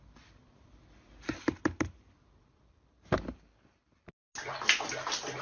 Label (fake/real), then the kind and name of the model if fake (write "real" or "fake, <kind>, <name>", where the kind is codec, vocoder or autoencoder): real